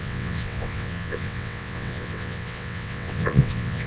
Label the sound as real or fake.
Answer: fake